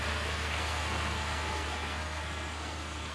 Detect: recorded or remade remade